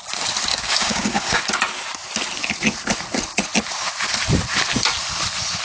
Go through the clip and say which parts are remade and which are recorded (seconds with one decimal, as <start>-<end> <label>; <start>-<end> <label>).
0.0-0.5 recorded; 0.5-1.5 remade; 1.5-5.6 recorded